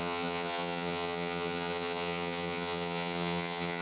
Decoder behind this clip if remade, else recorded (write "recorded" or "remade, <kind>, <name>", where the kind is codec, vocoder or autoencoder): remade, vocoder, HiFi-GAN